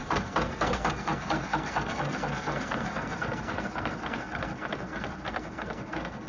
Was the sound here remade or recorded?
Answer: remade